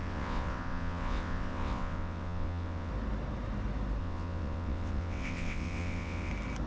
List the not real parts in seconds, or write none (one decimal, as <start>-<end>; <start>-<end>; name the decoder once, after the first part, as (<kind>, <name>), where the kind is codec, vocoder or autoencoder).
0.0-2.9 (vocoder, WaveNeXt); 4.0-6.3